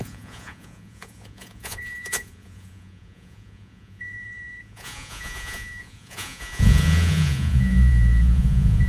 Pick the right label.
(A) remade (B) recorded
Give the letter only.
A